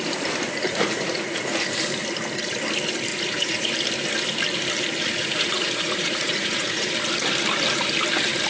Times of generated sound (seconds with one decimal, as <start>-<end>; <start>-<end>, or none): 0.6-1.5; 3.1-3.7; 5.2-6.9